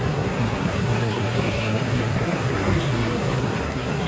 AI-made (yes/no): yes